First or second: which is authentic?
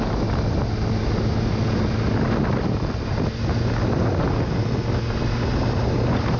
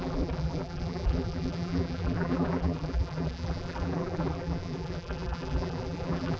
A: first